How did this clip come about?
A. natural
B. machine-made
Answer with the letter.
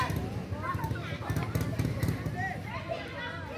A